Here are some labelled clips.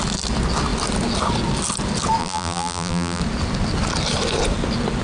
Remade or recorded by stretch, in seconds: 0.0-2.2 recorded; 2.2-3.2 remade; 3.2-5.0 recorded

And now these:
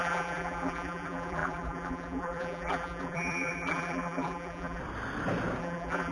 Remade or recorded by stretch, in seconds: 0.0-4.8 remade; 4.8-5.6 recorded; 5.6-6.1 remade